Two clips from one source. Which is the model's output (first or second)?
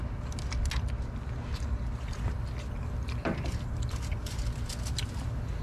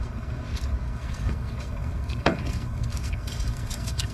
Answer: second